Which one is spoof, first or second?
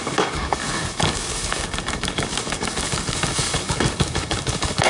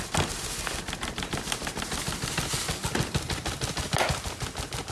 first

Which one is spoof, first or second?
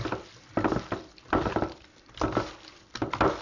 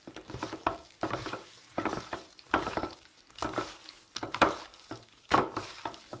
second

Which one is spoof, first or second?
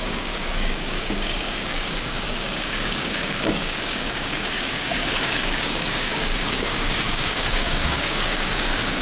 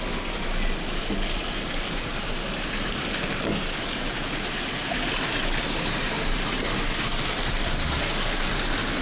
first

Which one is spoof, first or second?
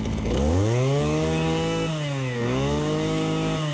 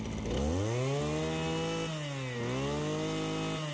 first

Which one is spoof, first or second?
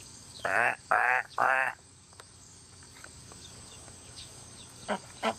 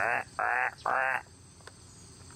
first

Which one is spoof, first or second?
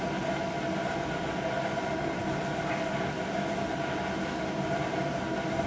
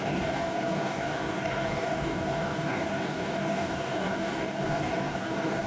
second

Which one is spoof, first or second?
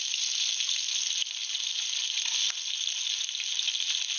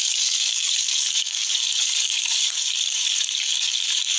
second